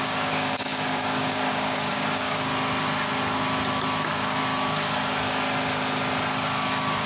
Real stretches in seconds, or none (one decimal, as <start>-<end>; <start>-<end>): 2.5-7.1